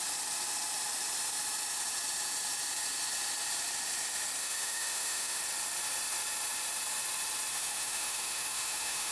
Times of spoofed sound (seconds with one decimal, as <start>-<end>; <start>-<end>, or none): 4.4-5.4; 7.5-9.1